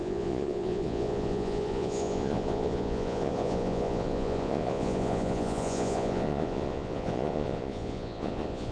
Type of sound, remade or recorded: remade